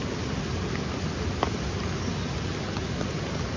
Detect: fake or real real